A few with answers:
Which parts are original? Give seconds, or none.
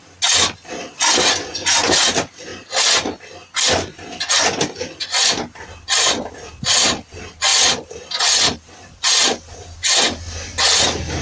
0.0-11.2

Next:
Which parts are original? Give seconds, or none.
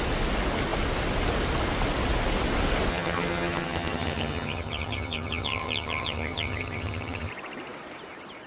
0.0-2.9; 7.3-8.5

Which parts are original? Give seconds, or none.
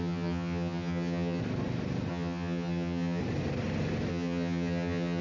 1.4-2.1; 3.2-4.1